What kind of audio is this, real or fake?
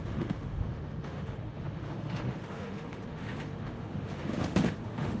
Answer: fake